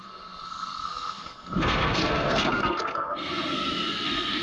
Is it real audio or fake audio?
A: fake